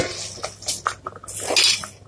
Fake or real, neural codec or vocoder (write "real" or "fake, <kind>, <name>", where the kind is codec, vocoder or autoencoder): real